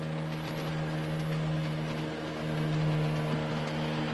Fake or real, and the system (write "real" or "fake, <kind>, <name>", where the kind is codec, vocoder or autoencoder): real